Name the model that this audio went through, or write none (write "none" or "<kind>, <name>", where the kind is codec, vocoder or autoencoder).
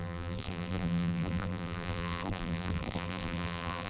vocoder, BigVGAN v2